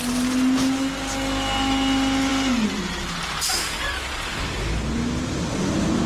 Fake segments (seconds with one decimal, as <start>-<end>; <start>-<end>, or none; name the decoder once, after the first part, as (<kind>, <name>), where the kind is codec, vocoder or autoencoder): none